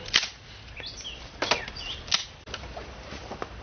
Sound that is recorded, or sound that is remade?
recorded